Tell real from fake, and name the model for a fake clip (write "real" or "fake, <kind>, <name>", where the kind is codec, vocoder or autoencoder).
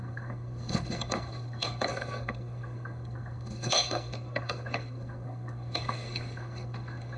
fake, codec, SNAC